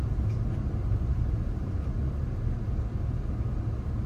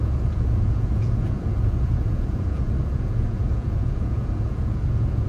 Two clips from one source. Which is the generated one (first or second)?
second